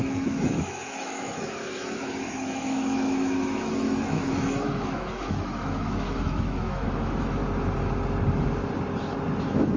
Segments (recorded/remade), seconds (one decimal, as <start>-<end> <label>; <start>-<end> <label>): 0.0-7.4 remade; 7.4-9.4 recorded; 9.4-9.8 remade